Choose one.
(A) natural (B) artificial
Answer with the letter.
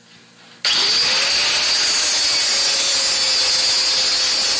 A